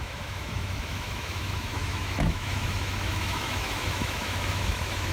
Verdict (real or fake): fake